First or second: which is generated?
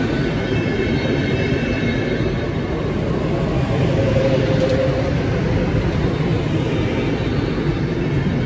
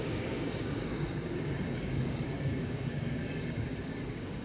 second